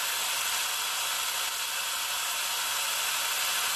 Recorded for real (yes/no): yes